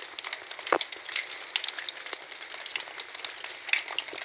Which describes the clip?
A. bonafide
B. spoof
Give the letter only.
A